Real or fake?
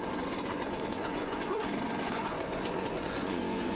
fake